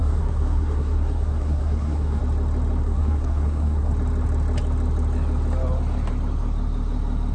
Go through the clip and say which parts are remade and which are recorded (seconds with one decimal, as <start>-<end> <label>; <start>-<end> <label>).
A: 0.0-2.2 remade; 2.2-2.8 recorded; 2.8-3.9 remade; 3.9-7.3 recorded